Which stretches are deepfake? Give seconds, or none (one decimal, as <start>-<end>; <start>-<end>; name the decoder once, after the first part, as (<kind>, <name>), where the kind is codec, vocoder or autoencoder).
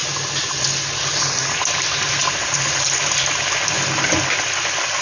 none